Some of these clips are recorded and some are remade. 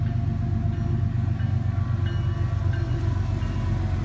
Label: recorded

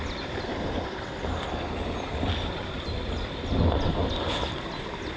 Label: recorded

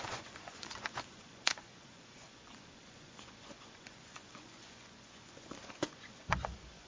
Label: remade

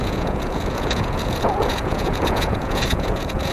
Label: remade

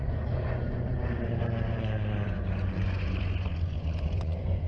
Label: remade